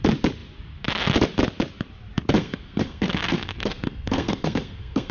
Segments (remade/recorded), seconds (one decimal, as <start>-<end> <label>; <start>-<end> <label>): 0.0-2.4 recorded; 2.4-5.1 remade